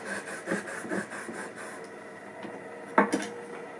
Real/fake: real